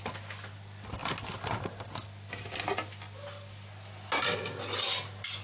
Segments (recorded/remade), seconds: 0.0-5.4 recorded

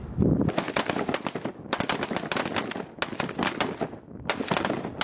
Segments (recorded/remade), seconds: 0.0-5.0 recorded

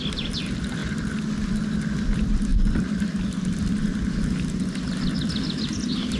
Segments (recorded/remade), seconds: 0.0-6.2 recorded

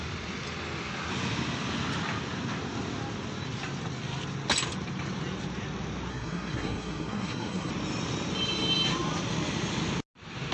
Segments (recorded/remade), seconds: 0.0-6.1 recorded; 6.1-7.7 remade; 7.7-10.5 recorded

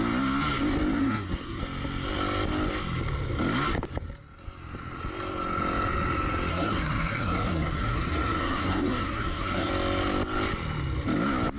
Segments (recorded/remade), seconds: 0.0-1.0 recorded; 1.0-1.6 remade; 1.6-6.5 recorded; 6.5-9.7 remade; 9.7-11.6 recorded

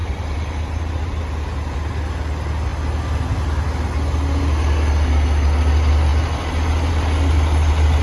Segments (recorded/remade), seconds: 0.0-1.2 remade; 1.2-8.0 recorded

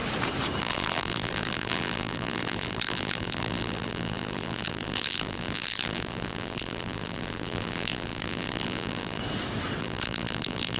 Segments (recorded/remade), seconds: 0.0-0.6 recorded; 0.6-9.2 remade; 9.2-9.8 recorded; 9.8-10.8 remade

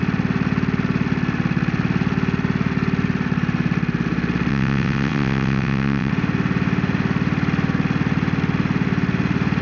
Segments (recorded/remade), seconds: 0.0-4.5 recorded; 4.5-6.1 remade; 6.1-9.6 recorded